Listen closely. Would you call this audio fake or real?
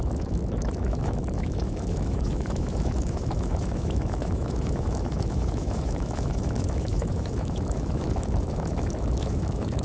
fake